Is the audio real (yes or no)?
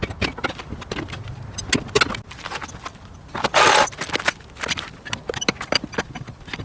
yes